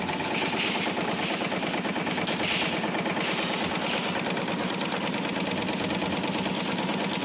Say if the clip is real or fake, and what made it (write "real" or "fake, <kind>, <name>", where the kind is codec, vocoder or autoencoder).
real